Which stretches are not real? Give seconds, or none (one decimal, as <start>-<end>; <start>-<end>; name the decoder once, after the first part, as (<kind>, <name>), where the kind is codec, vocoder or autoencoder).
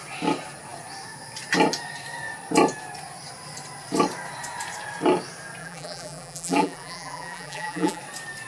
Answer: 5.6-8.0 (vocoder, BigVGAN v2)